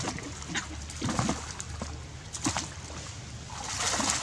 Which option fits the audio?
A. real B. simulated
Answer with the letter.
A